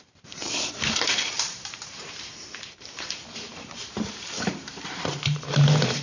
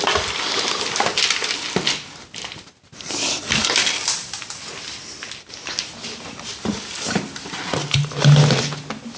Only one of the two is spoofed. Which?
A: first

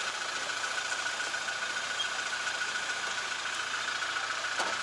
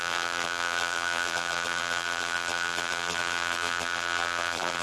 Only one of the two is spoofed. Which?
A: second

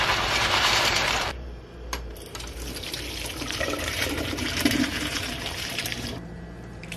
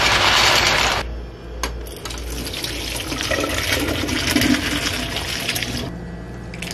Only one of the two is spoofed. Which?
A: first